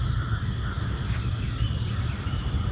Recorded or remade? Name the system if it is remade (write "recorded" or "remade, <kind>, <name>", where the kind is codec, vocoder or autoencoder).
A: recorded